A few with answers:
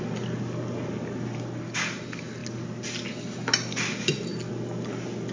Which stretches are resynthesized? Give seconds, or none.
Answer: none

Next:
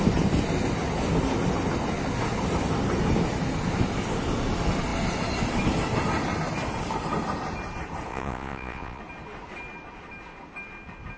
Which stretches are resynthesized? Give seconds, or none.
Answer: 8.1-9.0 (vocoder, Vocos)

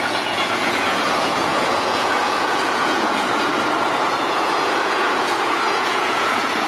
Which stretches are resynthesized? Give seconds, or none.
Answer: 0.0-3.5 (vocoder, Vocos); 4.0-6.7